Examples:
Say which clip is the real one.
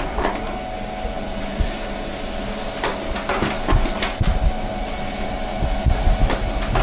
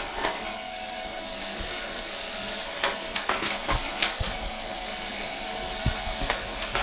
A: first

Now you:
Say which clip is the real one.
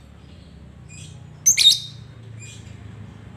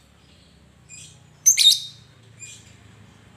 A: first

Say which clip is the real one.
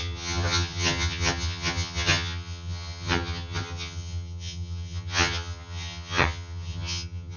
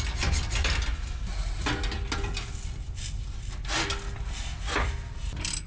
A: second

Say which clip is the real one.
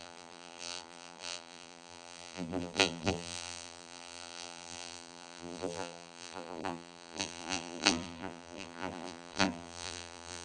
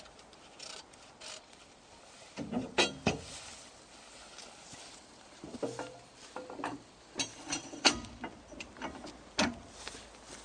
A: second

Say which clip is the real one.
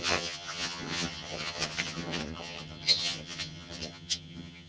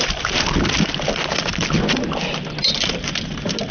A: second